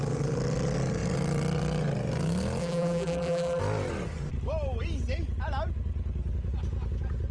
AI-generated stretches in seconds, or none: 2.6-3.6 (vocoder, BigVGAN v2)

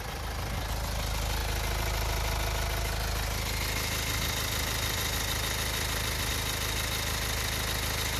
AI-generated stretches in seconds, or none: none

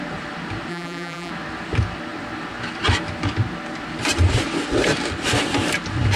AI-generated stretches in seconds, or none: 0.7-1.3 (vocoder, BigVGAN v2)

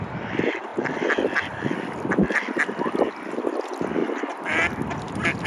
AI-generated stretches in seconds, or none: 0.0-4.0 (vocoder, BigVGAN v2); 4.8-5.5

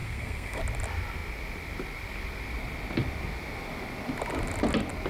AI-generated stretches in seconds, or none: 0.0-0.6 (codec, SNAC)